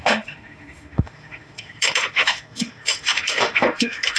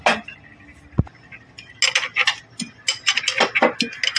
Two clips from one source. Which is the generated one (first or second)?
first